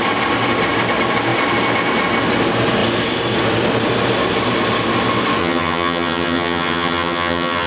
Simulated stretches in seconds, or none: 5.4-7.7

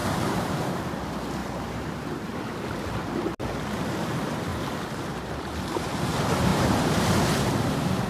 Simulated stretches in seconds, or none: 0.0-0.8; 1.4-2.4; 6.5-7.0

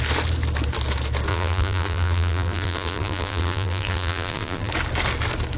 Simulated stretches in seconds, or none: 1.3-4.7

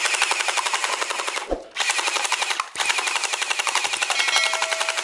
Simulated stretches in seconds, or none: none